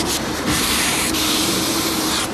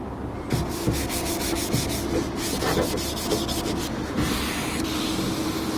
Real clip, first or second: second